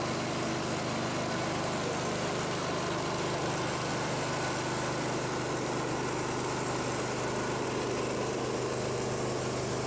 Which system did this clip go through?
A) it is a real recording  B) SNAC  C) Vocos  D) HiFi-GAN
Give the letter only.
A